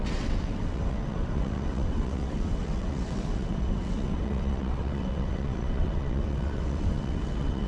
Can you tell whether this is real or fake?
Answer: fake